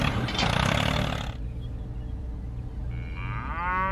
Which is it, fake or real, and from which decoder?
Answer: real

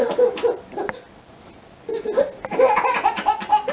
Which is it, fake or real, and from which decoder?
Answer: real